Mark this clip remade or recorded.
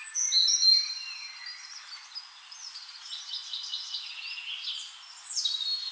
recorded